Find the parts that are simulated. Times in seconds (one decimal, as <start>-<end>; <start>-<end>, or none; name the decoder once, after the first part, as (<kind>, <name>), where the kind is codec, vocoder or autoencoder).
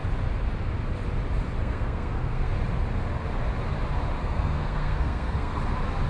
1.6-2.5 (codec, SNAC); 4.2-5.6